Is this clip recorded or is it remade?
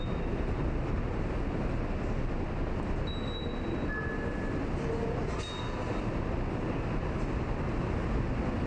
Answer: recorded